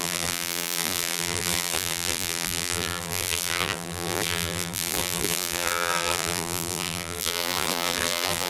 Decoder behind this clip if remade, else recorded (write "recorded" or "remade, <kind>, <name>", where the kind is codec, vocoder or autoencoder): remade, vocoder, BigVGAN v2